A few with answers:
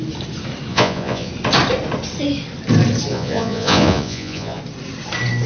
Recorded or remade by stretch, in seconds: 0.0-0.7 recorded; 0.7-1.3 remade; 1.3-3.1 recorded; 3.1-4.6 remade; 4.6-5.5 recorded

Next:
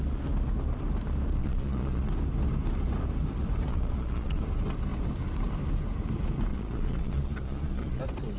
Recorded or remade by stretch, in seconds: 0.0-1.4 recorded; 1.4-2.1 remade; 2.1-3.7 recorded; 3.7-4.4 remade; 4.4-6.5 recorded; 6.5-8.0 remade; 8.0-8.4 recorded

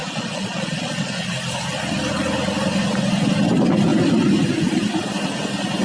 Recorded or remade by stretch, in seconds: 0.0-1.3 remade; 1.3-5.8 recorded

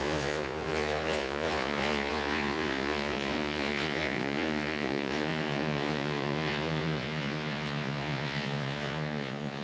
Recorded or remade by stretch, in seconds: 0.0-9.6 remade

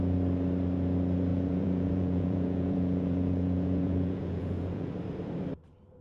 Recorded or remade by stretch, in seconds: 0.0-1.3 recorded; 1.3-4.9 remade; 4.9-6.0 recorded

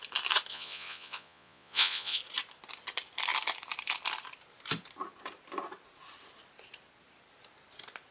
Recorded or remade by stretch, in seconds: 0.0-0.5 recorded; 0.5-2.2 remade; 2.2-8.1 recorded

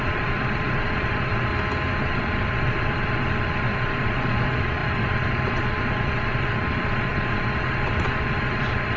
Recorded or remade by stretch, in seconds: 0.0-1.5 remade; 1.5-2.0 recorded; 2.0-9.0 remade

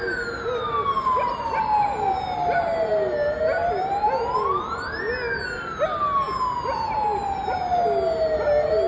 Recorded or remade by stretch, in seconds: 0.0-8.9 recorded